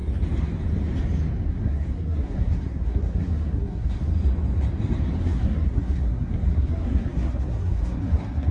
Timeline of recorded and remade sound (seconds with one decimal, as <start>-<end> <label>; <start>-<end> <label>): 0.0-1.5 recorded; 1.5-4.1 remade; 4.1-5.2 recorded; 5.2-8.5 remade